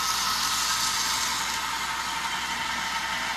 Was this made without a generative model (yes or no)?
yes